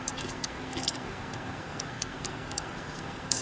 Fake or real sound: fake